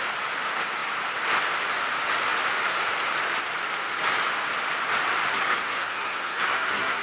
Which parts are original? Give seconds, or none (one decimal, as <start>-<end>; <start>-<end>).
0.0-5.3